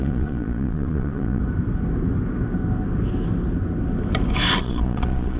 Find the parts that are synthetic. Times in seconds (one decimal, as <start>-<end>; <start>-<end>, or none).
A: 0.0-1.4; 4.6-5.4